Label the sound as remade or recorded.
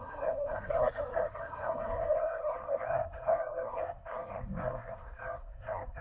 remade